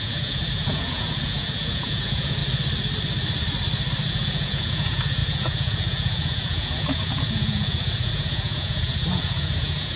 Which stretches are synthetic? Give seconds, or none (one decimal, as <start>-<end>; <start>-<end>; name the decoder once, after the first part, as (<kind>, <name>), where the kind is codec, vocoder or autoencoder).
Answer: 0.0-2.4 (vocoder, Vocos); 4.1-10.0